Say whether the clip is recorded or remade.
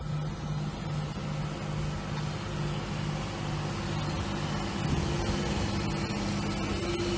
recorded